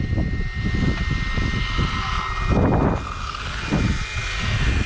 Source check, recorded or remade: recorded